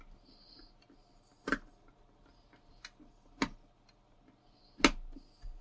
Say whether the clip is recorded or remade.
recorded